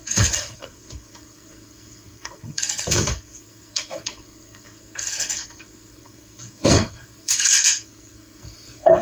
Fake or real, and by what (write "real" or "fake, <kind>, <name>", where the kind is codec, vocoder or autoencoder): fake, codec, SNAC